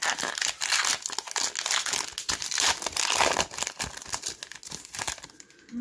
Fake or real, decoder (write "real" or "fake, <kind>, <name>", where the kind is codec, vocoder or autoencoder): real